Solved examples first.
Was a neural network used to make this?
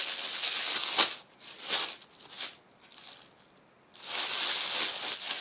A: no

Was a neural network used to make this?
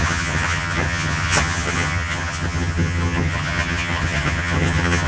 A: yes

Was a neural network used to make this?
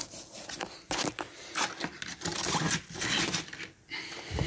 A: no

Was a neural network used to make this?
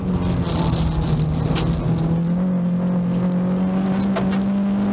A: no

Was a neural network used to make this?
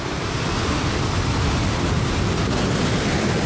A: no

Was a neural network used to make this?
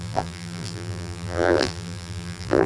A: yes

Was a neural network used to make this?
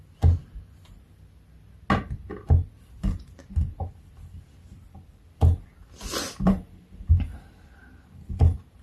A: no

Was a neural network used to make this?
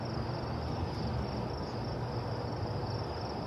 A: no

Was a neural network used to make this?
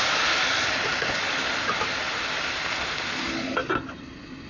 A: no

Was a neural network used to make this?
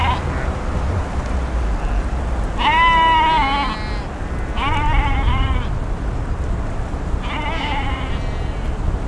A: no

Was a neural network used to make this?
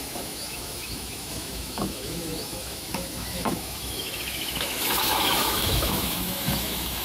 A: yes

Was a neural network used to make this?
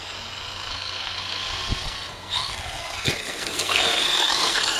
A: yes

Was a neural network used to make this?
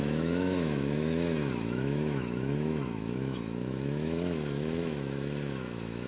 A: yes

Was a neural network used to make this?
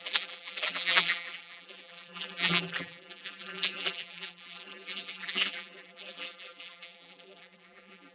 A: yes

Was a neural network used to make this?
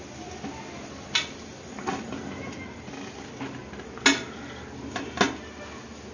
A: no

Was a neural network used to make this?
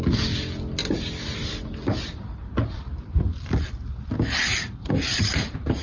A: no